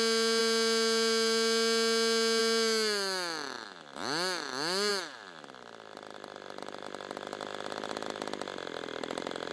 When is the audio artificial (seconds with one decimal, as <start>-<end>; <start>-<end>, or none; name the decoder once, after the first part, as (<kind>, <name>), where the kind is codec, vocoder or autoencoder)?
none